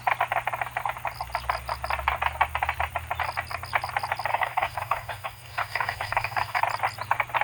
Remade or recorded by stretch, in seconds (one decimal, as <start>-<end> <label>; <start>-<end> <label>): 0.0-4.3 recorded; 4.3-6.6 remade; 6.6-7.4 recorded